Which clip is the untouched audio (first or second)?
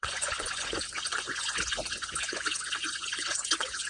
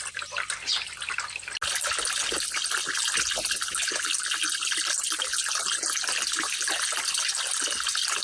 second